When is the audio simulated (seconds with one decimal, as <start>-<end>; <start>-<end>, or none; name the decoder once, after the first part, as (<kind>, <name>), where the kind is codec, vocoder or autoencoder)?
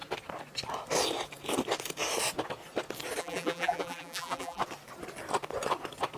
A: 3.2-4.6 (vocoder, BigVGAN v2)